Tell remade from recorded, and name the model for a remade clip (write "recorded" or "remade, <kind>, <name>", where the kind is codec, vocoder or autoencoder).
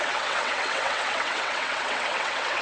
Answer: remade, vocoder, WaveNeXt